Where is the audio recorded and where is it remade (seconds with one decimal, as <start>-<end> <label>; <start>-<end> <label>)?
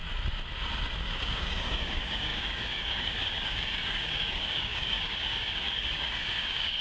0.0-1.0 recorded; 1.0-6.8 remade